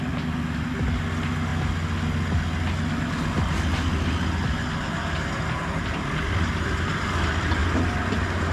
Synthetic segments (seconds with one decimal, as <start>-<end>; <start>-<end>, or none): none